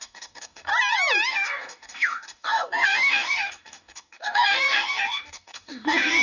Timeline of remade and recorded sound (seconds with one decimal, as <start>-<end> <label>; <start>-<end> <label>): 0.0-0.7 remade; 0.7-1.3 recorded; 1.3-6.2 remade